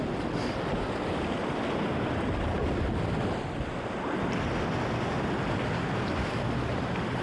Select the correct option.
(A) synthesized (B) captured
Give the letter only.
B